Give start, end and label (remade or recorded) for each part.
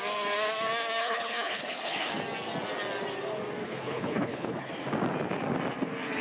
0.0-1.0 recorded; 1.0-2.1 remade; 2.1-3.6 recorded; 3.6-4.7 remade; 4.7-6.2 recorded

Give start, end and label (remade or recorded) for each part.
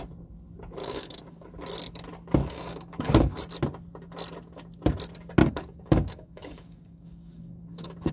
0.0-0.8 recorded; 0.8-1.5 remade; 1.5-2.4 recorded; 2.4-3.4 remade; 3.4-5.4 recorded; 5.4-8.1 remade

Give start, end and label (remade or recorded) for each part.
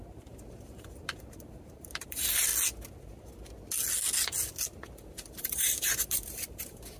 0.0-2.5 remade; 2.5-5.4 recorded; 5.4-7.0 remade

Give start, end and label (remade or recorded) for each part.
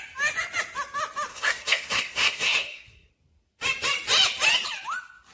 0.0-1.3 recorded; 1.3-3.1 remade; 3.1-5.3 recorded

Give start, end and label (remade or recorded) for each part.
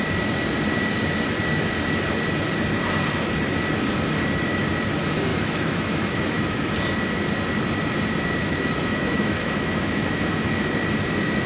0.0-5.3 recorded; 5.3-6.7 remade; 6.7-8.4 recorded; 8.4-10.7 remade; 10.7-11.5 recorded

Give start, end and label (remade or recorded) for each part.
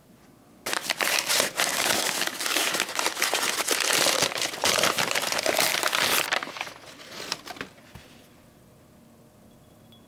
0.0-1.7 recorded; 1.7-2.7 remade; 2.7-10.1 recorded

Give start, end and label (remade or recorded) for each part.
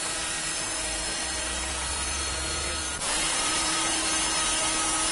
0.0-4.0 remade; 4.0-5.1 recorded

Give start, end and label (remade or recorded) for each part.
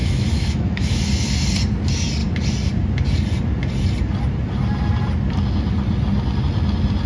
0.0-1.0 remade; 1.0-7.1 recorded